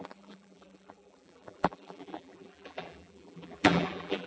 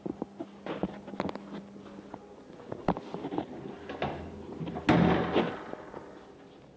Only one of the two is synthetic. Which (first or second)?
first